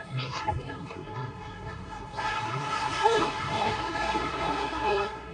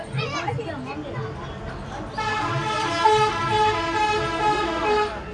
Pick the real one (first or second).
second